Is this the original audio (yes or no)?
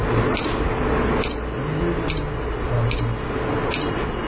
yes